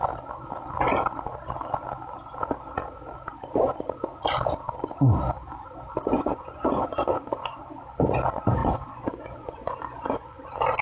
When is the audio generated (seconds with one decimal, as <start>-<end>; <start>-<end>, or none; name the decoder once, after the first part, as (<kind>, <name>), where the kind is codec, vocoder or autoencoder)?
6.1-7.6 (vocoder, Vocos); 8.6-10.4